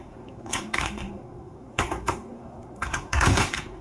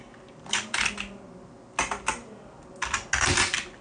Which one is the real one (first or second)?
second